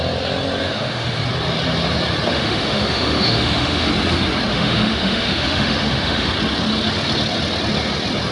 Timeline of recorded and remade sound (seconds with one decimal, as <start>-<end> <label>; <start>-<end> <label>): 0.0-0.6 recorded; 0.6-1.2 remade; 1.2-2.3 recorded; 2.3-3.9 remade; 3.9-4.5 recorded; 4.5-6.3 remade; 6.3-8.3 recorded